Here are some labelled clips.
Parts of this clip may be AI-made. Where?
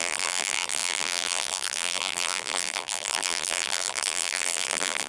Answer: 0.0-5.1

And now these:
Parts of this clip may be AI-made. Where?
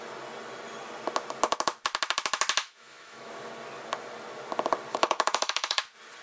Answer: 2.6-3.3; 4.9-5.8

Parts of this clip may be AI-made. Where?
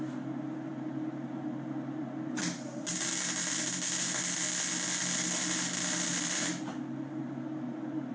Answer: 6.1-7.2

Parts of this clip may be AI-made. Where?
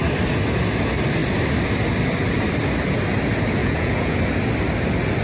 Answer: 3.6-4.2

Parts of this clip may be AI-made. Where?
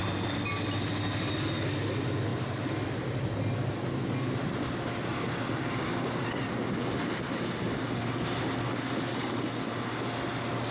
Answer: 2.3-2.8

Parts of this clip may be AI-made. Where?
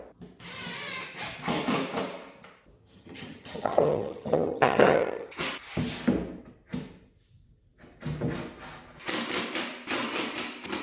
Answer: 2.8-5.4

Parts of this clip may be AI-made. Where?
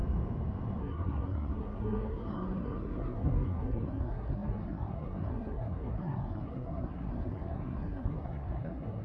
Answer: 0.8-9.0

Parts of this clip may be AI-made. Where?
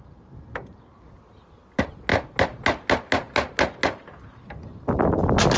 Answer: none